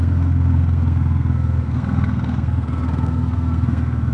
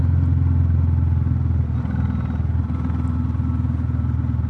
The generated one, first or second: first